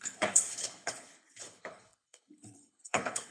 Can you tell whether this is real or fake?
fake